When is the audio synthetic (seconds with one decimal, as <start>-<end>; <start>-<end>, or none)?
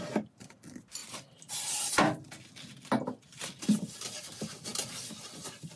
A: none